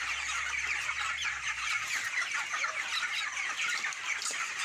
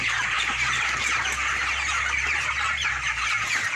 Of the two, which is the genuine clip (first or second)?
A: second